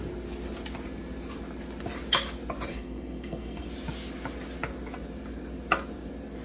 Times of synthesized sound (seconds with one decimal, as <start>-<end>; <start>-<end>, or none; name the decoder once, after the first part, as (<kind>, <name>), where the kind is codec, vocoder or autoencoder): 2.7-3.7 (codec, SNAC)